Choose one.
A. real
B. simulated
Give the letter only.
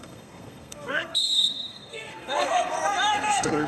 B